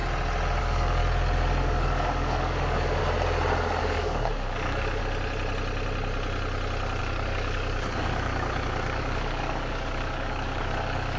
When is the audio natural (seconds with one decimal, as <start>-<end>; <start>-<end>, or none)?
0.0-0.6; 1.0-1.6; 3.0-3.8; 5.0-7.0